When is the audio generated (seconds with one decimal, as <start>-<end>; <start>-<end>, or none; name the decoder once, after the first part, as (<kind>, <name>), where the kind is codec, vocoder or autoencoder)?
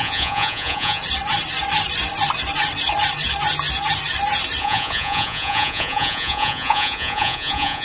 0.0-1.0 (vocoder, Vocos); 4.6-7.8